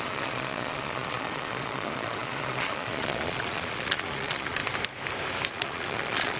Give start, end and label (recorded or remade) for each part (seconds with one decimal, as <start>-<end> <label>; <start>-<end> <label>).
0.0-4.6 remade; 4.6-5.5 recorded; 5.5-6.4 remade